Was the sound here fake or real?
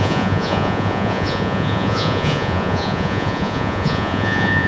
fake